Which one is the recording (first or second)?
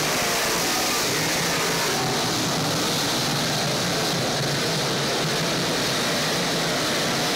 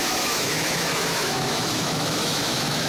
first